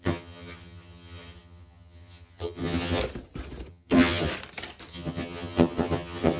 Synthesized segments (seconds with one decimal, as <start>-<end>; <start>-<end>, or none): 0.0-3.0; 3.7-4.3; 4.9-6.4